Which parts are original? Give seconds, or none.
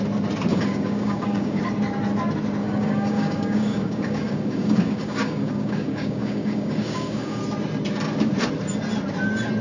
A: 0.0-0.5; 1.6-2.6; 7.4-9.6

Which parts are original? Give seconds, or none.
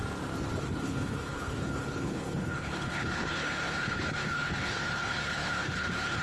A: 0.0-0.7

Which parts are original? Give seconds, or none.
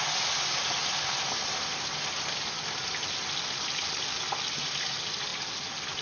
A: 0.0-6.0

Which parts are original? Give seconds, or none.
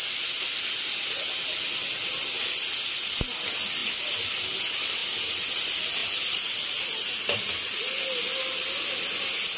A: 0.0-3.8; 4.6-6.0; 7.8-9.6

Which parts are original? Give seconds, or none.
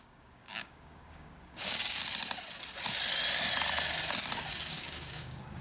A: 2.0-4.5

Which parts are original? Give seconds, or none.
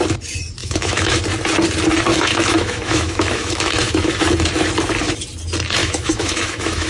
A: 0.0-0.6; 1.2-2.1; 4.2-5.8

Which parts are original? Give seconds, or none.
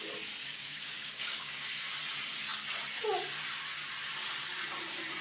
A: 0.0-0.4; 1.7-5.2